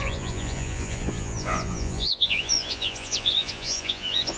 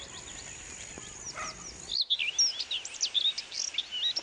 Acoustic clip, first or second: second